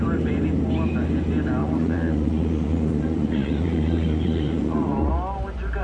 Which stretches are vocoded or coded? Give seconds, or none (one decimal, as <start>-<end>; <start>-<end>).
1.6-5.1